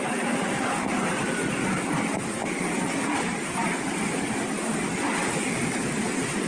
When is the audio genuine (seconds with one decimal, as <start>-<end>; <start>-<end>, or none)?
0.0-6.5